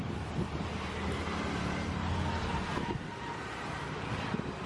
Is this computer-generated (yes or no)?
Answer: no